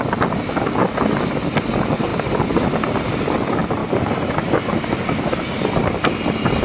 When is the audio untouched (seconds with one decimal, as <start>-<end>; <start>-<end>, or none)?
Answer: 0.0-2.1; 2.6-3.8; 4.4-6.6